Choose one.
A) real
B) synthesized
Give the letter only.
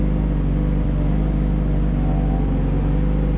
A